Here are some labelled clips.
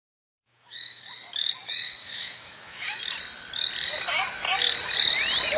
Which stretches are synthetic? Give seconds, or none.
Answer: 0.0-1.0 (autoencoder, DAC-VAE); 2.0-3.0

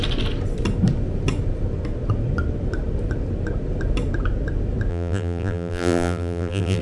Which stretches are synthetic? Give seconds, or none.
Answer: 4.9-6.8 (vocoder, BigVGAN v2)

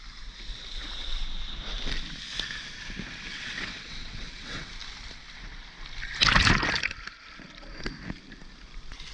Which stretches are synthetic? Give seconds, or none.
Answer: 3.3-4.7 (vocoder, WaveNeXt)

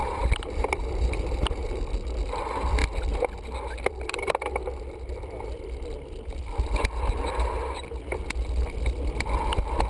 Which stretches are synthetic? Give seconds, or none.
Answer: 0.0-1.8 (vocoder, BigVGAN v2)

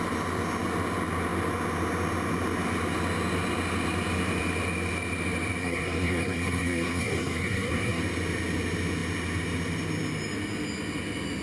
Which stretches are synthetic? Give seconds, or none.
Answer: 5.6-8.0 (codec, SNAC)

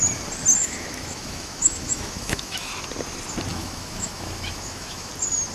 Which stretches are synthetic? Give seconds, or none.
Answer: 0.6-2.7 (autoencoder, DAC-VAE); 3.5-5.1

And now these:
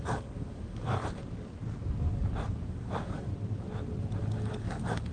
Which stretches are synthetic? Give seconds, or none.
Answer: 0.0-1.0 (codec, DAC); 2.7-3.3; 4.2-5.1

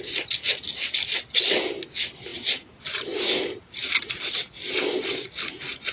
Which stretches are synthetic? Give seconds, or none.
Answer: none